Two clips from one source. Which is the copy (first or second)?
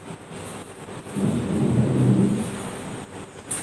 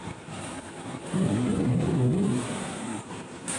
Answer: second